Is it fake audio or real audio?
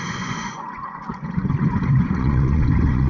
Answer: fake